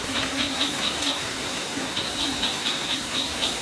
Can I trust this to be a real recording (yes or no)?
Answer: no